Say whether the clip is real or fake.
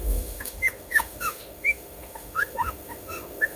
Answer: fake